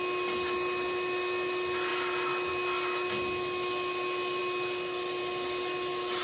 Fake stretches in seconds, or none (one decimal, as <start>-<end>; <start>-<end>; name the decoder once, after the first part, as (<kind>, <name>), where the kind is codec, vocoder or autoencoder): none